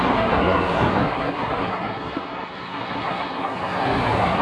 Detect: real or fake fake